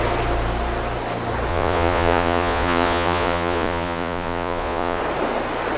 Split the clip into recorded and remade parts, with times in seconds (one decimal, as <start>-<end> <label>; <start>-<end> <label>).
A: 0.0-1.5 recorded; 1.5-5.0 remade; 5.0-5.8 recorded